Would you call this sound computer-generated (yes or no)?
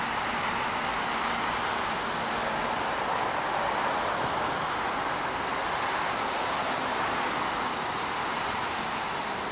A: no